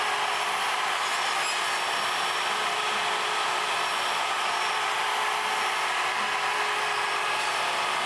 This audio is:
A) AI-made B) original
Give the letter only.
A